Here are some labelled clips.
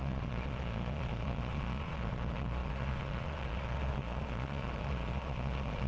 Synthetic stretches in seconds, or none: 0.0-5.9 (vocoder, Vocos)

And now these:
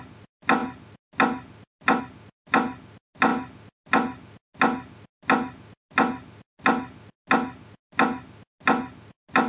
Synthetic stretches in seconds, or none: none